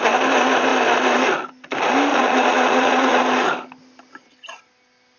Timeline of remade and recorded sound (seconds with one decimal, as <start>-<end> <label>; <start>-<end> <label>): 0.0-2.1 recorded; 2.1-3.2 remade; 3.2-5.2 recorded